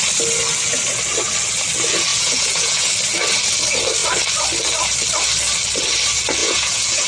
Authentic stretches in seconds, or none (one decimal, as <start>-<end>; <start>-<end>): 0.0-2.1; 2.9-6.4